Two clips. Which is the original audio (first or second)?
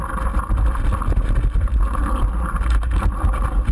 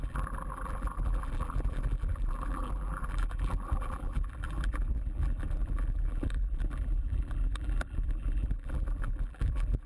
first